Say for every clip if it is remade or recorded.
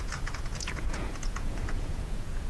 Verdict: remade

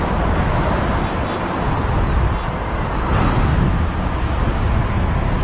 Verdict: recorded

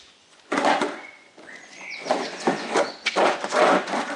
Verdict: remade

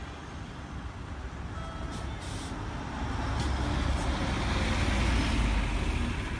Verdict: recorded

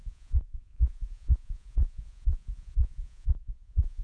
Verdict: remade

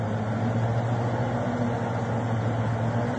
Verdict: recorded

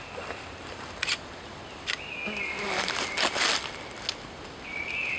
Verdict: recorded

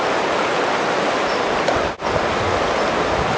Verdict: recorded